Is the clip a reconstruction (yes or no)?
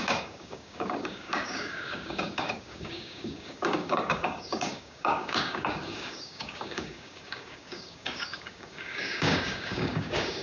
yes